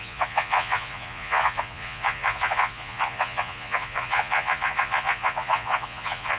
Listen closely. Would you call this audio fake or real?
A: fake